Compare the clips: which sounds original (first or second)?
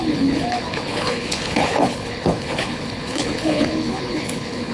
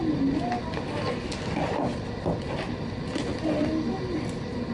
second